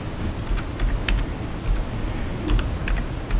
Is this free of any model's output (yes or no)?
yes